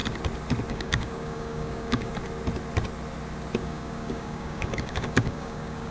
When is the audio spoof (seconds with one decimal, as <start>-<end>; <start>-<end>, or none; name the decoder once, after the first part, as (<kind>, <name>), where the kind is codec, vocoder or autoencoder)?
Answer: 0.7-2.1 (codec, DAC); 3.6-5.9